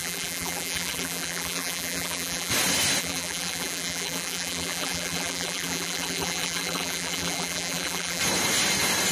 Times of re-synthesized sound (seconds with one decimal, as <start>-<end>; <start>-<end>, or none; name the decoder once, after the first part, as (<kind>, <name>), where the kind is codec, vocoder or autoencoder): 0.0-2.5 (vocoder, BigVGAN v2); 3.0-8.2